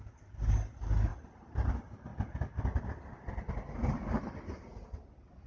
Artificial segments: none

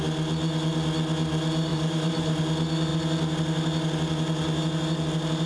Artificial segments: 1.7-2.4 (vocoder, BigVGAN v2)

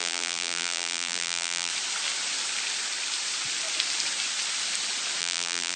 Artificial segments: 0.0-1.7 (vocoder, BigVGAN v2); 5.2-5.8